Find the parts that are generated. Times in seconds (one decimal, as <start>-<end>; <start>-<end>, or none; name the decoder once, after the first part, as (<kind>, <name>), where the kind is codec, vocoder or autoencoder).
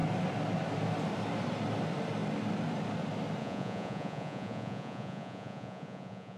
3.4-6.4 (vocoder, Vocos)